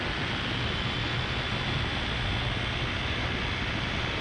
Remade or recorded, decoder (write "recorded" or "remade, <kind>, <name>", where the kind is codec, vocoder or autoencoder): recorded